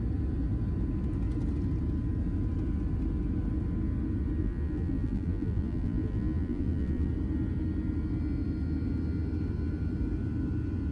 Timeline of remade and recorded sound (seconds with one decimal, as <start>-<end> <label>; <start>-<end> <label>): 0.0-4.4 recorded; 4.4-7.1 remade; 7.1-10.9 recorded